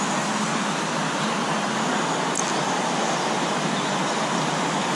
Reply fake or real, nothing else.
real